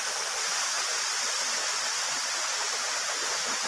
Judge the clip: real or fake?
real